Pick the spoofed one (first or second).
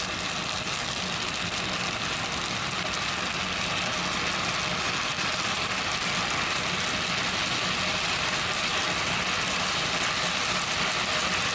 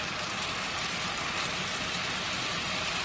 second